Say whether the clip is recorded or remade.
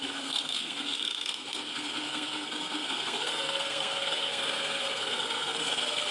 remade